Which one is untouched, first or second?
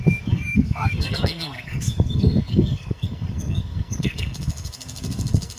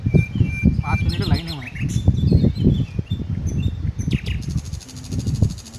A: second